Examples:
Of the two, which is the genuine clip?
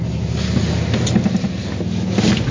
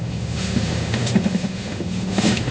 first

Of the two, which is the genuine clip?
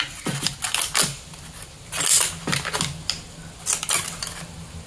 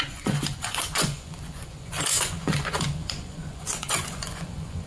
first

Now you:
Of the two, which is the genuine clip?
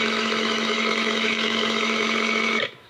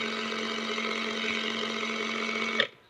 second